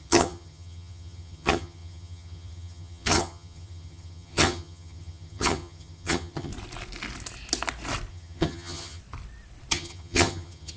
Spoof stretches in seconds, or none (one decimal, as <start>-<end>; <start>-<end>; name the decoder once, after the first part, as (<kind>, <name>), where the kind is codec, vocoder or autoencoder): 0.0-6.5 (vocoder, HiFi-GAN); 8.1-9.0; 9.7-10.8